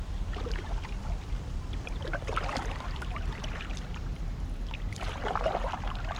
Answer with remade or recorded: remade